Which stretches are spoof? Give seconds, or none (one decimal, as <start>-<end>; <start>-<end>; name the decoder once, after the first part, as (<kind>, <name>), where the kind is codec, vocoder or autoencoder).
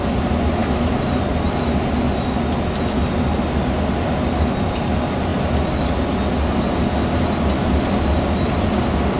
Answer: none